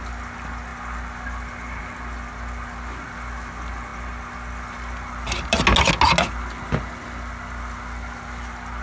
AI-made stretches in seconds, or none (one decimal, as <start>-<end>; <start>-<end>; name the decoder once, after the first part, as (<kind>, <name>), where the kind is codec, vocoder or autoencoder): none